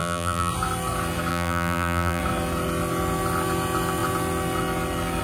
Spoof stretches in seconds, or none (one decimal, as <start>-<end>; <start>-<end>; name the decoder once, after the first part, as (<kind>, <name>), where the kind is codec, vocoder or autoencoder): 0.0-0.5 (vocoder, BigVGAN v2); 1.3-2.2